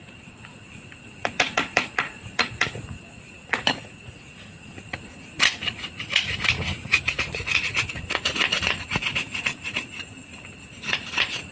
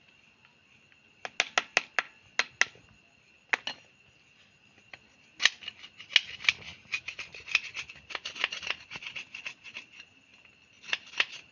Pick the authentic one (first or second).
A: second